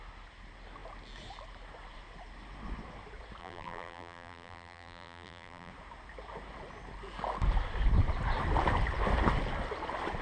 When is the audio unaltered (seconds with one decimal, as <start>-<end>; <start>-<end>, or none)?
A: 0.0-3.4; 5.7-10.2